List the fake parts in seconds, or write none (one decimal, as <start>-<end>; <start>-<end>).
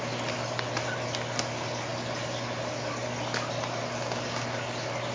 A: none